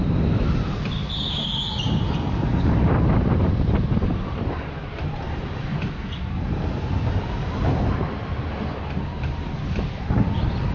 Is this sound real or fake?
real